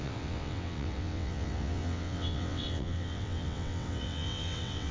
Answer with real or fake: fake